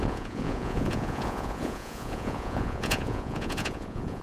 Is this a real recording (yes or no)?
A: no